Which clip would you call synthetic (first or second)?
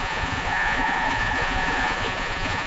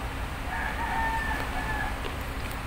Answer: first